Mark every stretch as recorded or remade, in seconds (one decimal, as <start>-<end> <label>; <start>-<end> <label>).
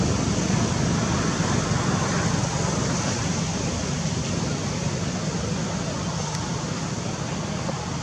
0.0-8.0 recorded